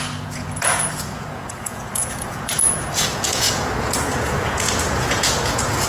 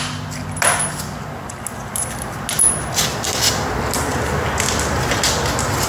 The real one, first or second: second